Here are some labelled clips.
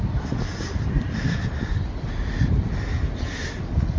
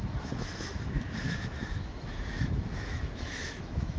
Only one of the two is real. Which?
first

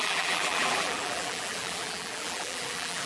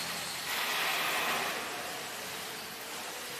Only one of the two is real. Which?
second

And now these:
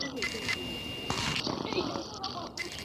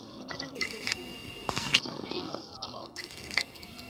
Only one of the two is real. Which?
first